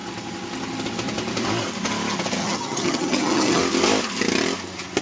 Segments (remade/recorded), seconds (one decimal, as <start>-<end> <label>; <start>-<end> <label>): 0.0-2.4 recorded; 2.4-3.6 remade; 3.6-5.0 recorded